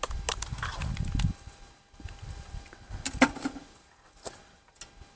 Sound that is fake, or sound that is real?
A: real